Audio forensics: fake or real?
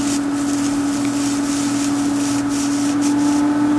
real